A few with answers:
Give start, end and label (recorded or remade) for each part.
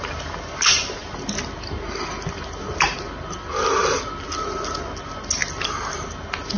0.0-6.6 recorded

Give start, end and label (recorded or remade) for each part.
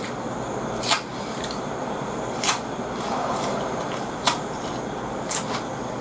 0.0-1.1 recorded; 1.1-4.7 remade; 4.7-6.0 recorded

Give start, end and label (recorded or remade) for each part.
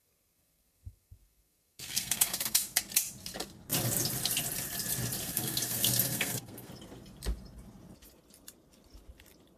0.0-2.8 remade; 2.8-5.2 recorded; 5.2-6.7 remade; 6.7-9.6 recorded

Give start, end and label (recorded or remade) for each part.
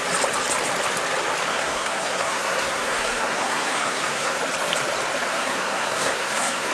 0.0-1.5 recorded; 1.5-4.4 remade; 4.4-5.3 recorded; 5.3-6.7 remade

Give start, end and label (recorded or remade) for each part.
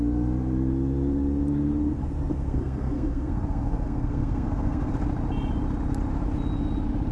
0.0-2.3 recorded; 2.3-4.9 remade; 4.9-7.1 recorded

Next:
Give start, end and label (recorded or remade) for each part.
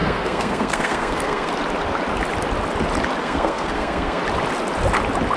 0.0-1.5 remade; 1.5-3.2 recorded; 3.2-4.2 remade; 4.2-5.4 recorded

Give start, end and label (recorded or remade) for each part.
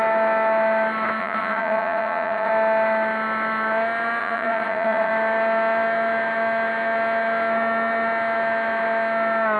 0.0-1.2 recorded; 1.2-2.5 remade; 2.5-4.2 recorded; 4.2-5.1 remade; 5.1-9.6 recorded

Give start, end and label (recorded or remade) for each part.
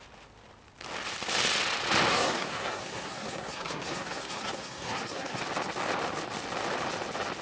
0.0-2.1 recorded; 2.1-5.4 remade; 5.4-7.4 recorded